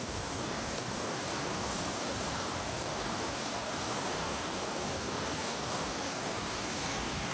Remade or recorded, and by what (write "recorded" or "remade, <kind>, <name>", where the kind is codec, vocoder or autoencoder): remade, codec, DAC